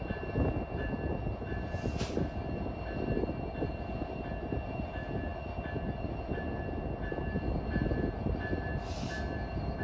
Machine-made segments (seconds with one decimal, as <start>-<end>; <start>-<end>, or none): none